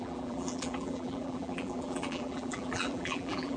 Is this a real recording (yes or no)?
no